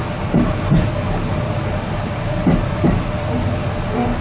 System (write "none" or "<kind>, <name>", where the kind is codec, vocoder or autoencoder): none